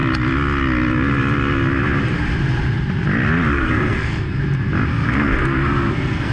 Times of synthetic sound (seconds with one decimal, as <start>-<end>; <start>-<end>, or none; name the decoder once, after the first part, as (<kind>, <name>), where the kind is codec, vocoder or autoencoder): 3.5-4.4 (codec, SNAC); 4.9-6.3